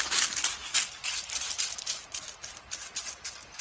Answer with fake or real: real